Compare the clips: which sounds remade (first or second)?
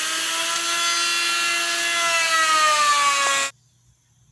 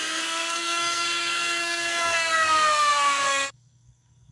second